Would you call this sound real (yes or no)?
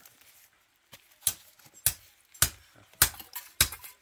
yes